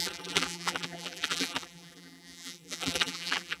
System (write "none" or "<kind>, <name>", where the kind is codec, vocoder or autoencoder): vocoder, BigVGAN v2